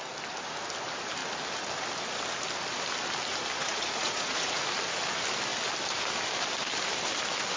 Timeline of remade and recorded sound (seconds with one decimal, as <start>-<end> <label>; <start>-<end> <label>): 0.0-3.6 recorded; 3.6-4.6 remade; 4.6-7.6 recorded